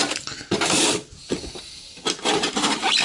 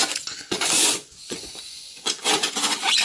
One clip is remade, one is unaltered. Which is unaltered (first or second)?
first